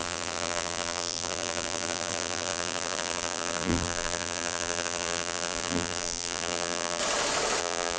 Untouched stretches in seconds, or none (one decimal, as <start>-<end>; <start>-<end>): 7.0-7.6